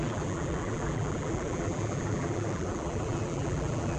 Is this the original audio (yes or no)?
no